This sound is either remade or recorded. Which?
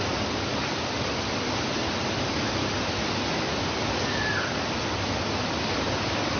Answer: recorded